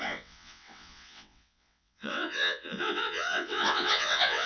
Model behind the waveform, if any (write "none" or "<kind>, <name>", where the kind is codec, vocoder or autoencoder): vocoder, WaveNeXt